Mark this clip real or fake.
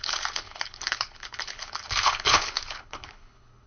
fake